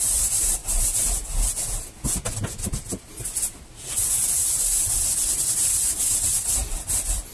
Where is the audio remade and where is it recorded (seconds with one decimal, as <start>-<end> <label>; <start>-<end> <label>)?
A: 0.0-7.3 recorded